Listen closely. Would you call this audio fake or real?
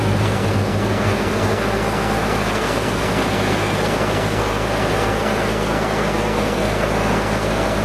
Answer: fake